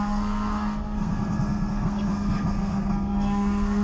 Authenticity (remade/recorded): remade